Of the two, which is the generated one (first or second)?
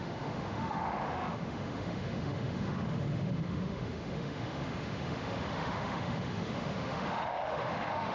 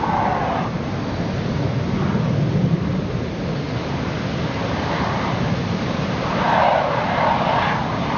first